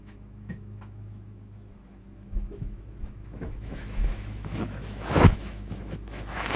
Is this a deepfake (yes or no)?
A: yes